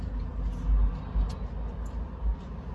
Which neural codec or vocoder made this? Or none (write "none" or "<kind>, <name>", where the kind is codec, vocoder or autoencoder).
none